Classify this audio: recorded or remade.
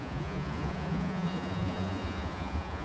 remade